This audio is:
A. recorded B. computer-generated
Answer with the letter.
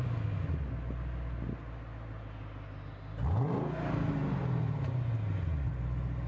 A